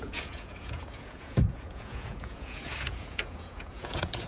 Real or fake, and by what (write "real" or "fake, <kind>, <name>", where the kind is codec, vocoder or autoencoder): fake, vocoder, Vocos